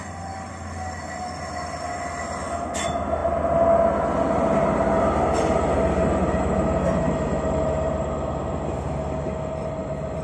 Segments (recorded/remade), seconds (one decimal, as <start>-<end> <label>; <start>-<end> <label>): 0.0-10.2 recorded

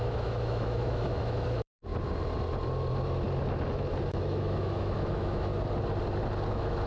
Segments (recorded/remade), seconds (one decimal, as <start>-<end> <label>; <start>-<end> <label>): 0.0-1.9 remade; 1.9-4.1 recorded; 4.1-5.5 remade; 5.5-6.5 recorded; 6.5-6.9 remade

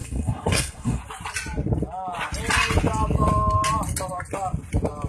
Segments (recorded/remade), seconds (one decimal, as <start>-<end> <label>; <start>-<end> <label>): 0.0-1.0 remade; 1.0-5.1 recorded